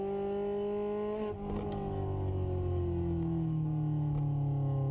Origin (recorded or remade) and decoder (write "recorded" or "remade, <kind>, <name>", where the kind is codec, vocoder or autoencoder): recorded